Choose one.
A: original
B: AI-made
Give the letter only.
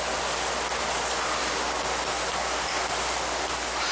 A